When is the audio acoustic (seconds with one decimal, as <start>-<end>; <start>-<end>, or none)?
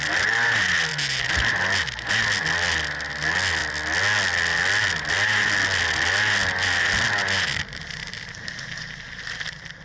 0.0-9.8